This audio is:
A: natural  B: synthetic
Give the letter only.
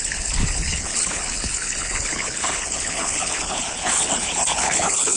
B